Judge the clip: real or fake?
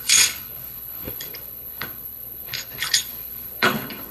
fake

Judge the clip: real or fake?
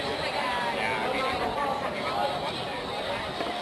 real